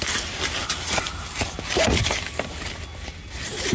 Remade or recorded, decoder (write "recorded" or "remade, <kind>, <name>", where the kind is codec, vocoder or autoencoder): recorded